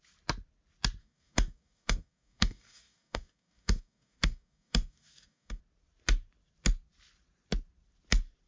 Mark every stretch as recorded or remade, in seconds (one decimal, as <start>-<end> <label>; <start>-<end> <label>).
0.0-1.0 recorded; 1.0-5.6 remade; 5.6-8.5 recorded

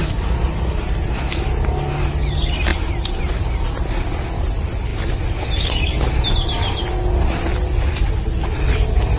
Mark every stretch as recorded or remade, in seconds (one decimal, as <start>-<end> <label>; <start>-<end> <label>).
0.0-9.2 recorded

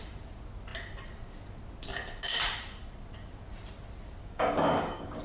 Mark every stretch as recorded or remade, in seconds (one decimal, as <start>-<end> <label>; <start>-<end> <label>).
0.0-4.2 recorded; 4.2-5.2 remade

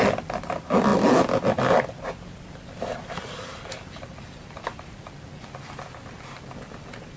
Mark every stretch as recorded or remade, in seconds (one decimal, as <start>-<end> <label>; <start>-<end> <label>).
0.0-7.2 recorded

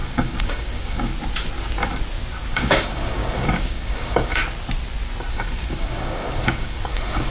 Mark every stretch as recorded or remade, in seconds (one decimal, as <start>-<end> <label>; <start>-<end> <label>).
0.0-1.1 remade; 1.1-2.5 recorded; 2.5-4.4 remade; 4.4-5.3 recorded; 5.3-7.3 remade

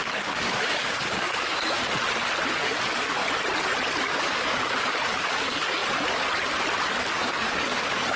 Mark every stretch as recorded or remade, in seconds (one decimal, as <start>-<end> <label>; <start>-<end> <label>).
0.0-1.8 remade; 1.8-2.5 recorded; 2.5-3.2 remade; 3.2-4.0 recorded; 4.0-5.8 remade; 5.8-7.0 recorded; 7.0-8.2 remade